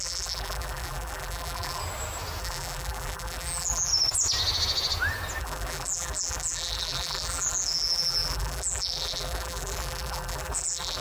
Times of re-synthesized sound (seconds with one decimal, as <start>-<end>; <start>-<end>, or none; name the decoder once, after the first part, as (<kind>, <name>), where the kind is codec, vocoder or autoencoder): 0.0-1.8 (vocoder, BigVGAN v2); 2.4-3.9; 5.4-11.0